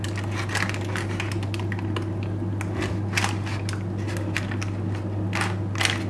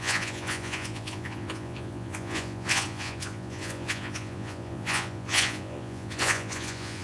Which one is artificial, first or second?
second